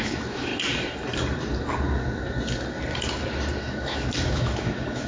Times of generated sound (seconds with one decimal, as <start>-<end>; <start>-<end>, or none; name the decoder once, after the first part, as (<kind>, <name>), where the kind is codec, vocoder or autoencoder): 0.0-0.5 (autoencoder, DAC-VAE); 3.6-5.1